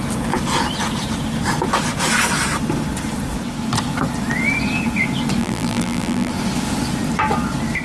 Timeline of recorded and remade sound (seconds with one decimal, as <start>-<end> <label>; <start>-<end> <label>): 0.0-5.4 recorded; 5.4-6.3 remade; 6.3-7.8 recorded